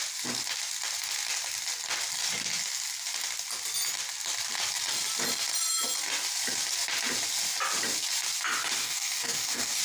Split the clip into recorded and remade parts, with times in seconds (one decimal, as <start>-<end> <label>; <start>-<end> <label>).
0.0-8.8 recorded; 8.8-9.8 remade